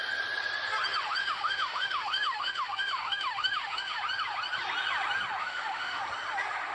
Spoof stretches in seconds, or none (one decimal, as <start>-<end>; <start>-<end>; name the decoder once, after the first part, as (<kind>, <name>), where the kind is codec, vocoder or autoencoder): 1.2-4.0 (autoencoder, DAC-VAE); 5.4-6.0